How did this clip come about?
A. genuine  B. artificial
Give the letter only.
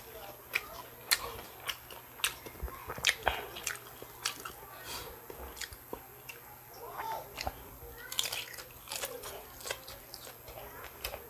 A